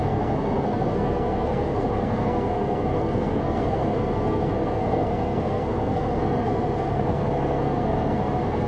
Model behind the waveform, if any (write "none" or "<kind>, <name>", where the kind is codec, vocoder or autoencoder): codec, SNAC